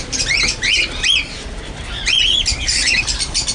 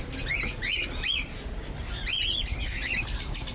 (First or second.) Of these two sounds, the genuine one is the second